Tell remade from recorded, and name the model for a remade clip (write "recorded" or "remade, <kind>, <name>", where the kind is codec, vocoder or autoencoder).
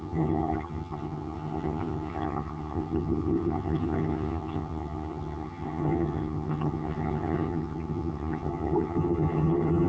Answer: remade, vocoder, HiFi-GAN